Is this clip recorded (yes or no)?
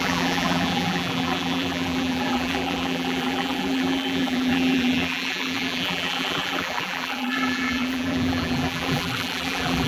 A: no